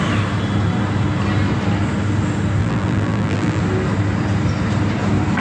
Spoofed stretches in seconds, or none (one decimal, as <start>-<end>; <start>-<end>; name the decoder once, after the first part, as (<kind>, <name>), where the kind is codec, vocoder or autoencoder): 2.6-3.6 (vocoder, BigVGAN v2)